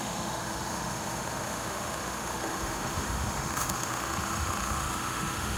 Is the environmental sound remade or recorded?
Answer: remade